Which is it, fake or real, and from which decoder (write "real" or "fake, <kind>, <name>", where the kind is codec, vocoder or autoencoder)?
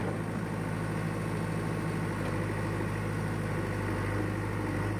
real